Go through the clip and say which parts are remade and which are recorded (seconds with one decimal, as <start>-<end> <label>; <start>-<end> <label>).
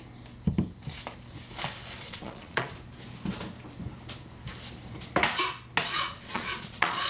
0.0-2.0 recorded; 2.0-2.7 remade; 2.7-5.8 recorded; 5.8-7.1 remade